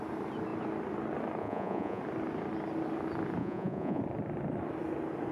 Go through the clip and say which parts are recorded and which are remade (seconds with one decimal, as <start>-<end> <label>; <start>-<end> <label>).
0.0-1.4 recorded; 1.4-2.0 remade; 2.0-3.4 recorded; 3.4-4.0 remade; 4.0-5.3 recorded